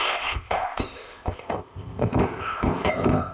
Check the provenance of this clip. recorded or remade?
remade